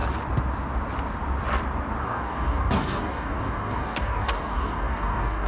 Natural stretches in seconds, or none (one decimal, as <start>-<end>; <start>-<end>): 0.0-2.0